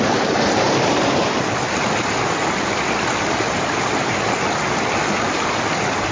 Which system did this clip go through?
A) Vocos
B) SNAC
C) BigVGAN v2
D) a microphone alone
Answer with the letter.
C